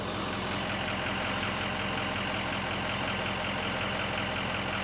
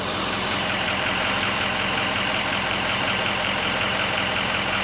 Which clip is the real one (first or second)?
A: first